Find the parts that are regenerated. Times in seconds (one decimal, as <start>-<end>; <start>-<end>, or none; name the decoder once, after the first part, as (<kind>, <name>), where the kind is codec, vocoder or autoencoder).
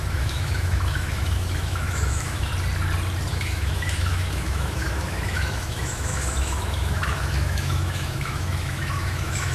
0.0-2.5 (autoencoder, DAC-VAE); 3.3-9.5